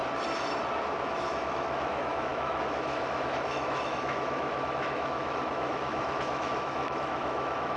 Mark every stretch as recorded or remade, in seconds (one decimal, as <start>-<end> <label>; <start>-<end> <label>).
0.0-1.0 recorded; 1.0-7.8 remade